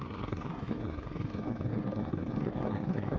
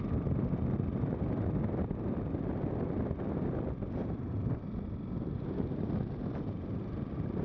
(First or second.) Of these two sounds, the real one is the second